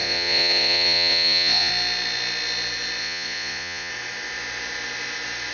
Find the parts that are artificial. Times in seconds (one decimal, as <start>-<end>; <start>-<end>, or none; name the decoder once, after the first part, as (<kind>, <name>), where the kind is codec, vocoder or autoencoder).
0.0-1.7 (vocoder, Vocos); 3.0-3.9